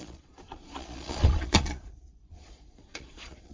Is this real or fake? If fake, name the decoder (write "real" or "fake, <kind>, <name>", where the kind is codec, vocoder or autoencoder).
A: fake, vocoder, Vocos